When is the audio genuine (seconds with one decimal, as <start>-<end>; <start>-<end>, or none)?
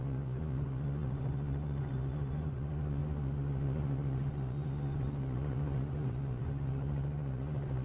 none